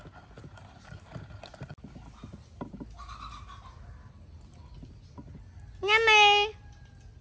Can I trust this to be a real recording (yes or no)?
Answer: yes